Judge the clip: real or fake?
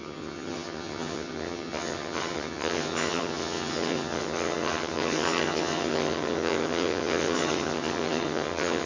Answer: fake